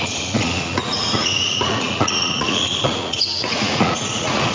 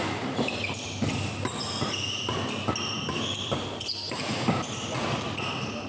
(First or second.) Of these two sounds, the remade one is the first